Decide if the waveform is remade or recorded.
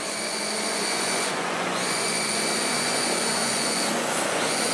remade